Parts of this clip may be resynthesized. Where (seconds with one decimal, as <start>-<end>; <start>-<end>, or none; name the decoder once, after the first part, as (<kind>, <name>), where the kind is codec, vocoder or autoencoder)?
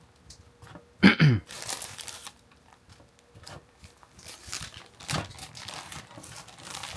1.1-4.0 (vocoder, BigVGAN v2); 5.3-7.0